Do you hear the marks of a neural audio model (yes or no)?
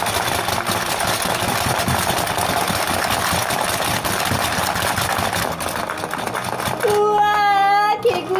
no